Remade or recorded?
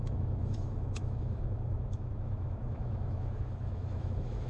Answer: remade